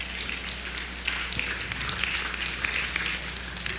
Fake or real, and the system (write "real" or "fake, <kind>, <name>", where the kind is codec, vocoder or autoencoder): real